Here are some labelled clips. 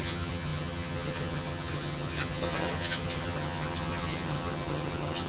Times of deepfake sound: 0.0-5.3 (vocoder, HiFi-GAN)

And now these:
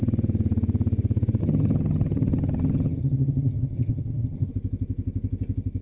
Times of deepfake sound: 1.4-4.5 (vocoder, HiFi-GAN)

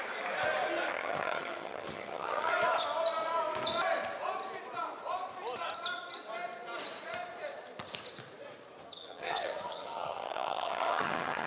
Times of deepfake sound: 0.9-2.5 (vocoder, HiFi-GAN); 8.9-11.5

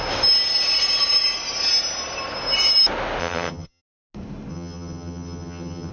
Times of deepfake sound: 3.2-3.8 (vocoder, HiFi-GAN); 4.5-5.9

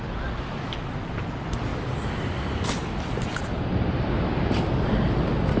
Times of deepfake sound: none

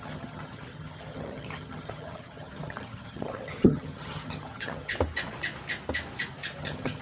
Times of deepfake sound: 0.0-4.9 (vocoder, HiFi-GAN); 6.6-7.0

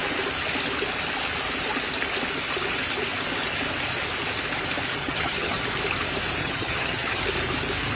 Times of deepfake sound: 5.0-5.6 (vocoder, HiFi-GAN); 6.4-7.2

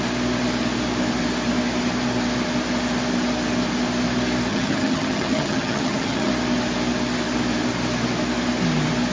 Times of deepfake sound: 4.5-6.3 (vocoder, HiFi-GAN)